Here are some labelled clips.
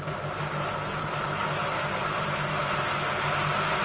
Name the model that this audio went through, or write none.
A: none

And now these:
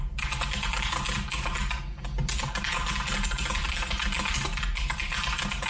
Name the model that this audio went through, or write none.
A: none